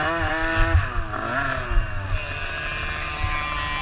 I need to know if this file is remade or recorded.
recorded